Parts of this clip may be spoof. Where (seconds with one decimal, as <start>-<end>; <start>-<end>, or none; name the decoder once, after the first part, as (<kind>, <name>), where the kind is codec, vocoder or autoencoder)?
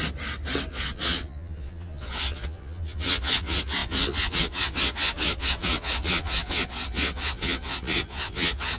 0.7-8.8 (vocoder, Vocos)